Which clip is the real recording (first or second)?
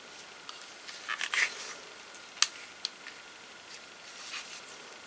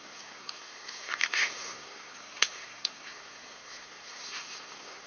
first